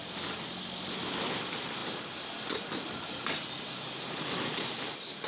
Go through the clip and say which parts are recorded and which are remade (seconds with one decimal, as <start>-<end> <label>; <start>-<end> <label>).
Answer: 0.0-5.3 recorded